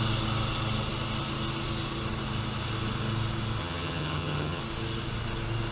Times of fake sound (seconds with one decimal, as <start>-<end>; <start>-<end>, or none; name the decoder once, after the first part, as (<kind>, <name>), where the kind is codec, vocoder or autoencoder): 3.6-4.6 (vocoder, HiFi-GAN)